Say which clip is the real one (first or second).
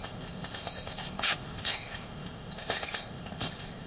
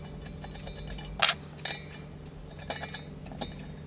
second